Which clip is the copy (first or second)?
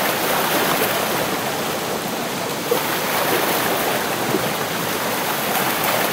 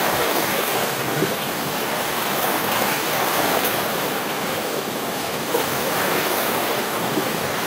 second